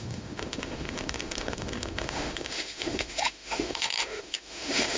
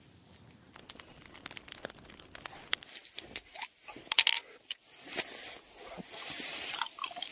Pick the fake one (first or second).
first